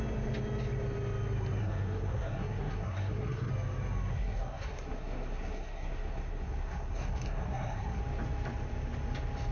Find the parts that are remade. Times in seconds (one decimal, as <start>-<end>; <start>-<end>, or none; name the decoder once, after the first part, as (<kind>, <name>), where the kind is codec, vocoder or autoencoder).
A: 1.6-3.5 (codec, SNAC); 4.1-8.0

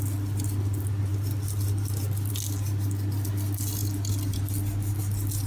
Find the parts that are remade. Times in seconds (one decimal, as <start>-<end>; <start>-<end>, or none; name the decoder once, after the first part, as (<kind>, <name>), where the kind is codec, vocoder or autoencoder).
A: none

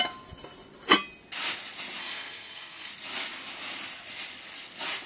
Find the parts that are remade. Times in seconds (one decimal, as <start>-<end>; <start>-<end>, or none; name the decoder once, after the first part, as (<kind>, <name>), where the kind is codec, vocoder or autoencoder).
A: 2.0-2.9 (codec, SNAC)

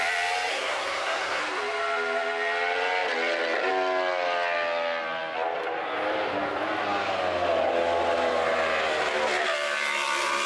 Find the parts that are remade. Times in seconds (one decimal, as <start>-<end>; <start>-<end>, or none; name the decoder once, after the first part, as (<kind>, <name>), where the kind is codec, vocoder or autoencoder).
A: 0.5-1.4 (codec, SNAC)